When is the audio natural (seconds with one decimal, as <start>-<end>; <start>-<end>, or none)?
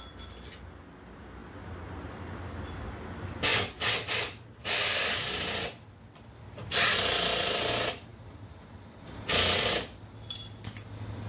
0.0-11.3